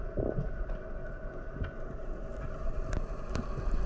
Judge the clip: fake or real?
real